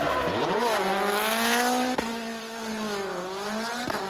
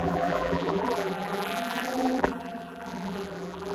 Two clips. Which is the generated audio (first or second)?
second